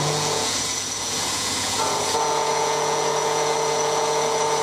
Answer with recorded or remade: remade